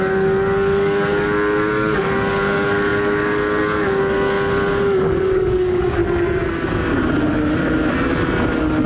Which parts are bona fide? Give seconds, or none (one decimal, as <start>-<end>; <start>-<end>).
6.0-8.5